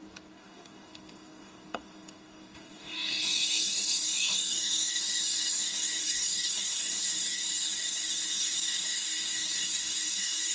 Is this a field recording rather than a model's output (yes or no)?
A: no